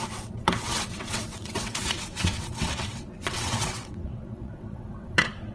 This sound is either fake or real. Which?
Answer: fake